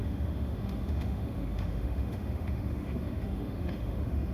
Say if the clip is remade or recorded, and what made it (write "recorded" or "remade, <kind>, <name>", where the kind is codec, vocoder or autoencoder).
remade, autoencoder, DAC-VAE